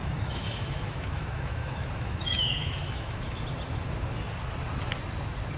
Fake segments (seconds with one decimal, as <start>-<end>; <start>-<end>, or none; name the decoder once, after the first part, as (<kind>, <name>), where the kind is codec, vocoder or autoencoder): 0.0-3.4 (autoencoder, DAC-VAE)